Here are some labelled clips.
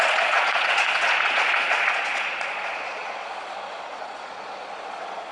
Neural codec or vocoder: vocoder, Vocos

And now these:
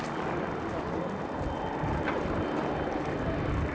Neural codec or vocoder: none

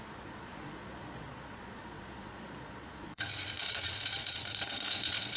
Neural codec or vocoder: vocoder, Vocos